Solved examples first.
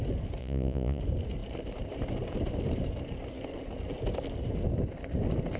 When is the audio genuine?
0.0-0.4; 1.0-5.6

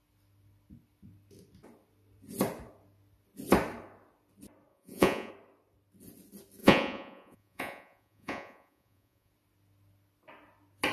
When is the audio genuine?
0.0-4.7; 5.3-6.6; 9.3-10.9

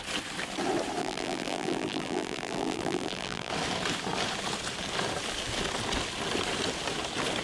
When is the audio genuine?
0.0-1.0; 3.5-7.4

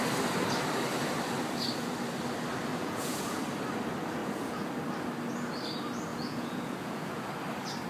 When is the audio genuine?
0.0-2.7; 3.4-4.2; 4.7-6.1; 7.3-7.9

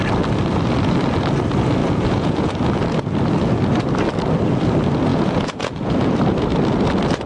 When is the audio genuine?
0.0-1.8; 2.5-5.1; 6.2-7.3

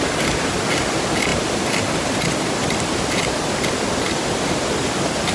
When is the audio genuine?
none

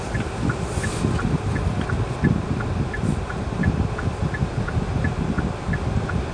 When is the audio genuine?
0.0-6.3

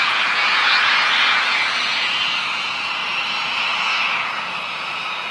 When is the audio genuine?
3.0-3.7